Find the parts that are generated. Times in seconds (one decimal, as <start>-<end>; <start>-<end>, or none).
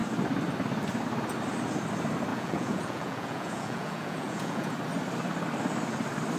2.3-4.7